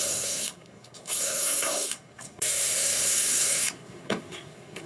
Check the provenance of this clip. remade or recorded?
remade